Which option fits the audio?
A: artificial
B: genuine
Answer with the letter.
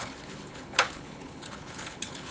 A